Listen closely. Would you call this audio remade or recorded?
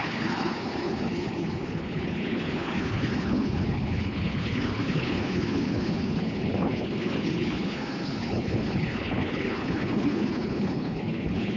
remade